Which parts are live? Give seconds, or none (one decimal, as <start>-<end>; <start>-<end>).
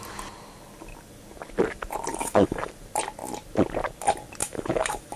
0.0-2.1; 2.7-4.4